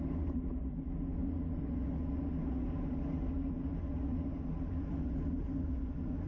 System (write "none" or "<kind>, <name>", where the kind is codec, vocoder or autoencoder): none